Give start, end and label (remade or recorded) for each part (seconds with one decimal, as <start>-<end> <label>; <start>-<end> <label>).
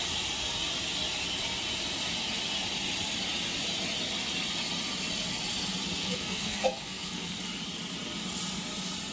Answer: 0.0-6.0 recorded; 6.0-7.4 remade; 7.4-9.1 recorded